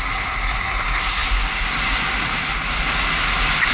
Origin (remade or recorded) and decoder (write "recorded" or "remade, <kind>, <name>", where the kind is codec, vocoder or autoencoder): recorded